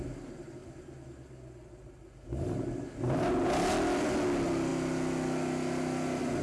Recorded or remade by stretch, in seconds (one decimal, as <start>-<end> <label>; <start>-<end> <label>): 0.0-6.4 recorded